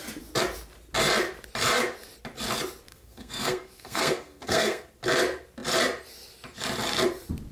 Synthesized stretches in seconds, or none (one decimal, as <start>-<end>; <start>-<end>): 2.9-4.9